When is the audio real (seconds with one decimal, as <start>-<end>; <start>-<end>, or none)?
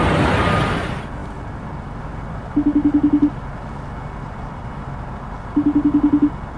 0.0-6.6